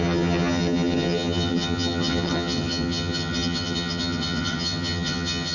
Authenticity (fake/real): fake